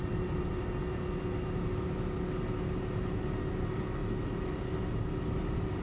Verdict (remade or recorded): recorded